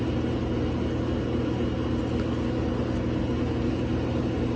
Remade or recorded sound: recorded